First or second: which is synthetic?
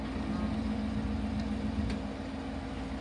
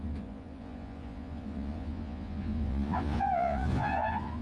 second